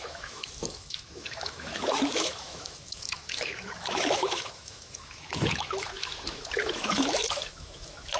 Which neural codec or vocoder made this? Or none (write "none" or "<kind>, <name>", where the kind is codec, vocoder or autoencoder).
autoencoder, DAC-VAE